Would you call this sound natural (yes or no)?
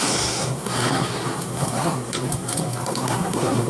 no